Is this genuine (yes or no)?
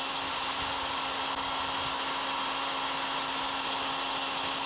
yes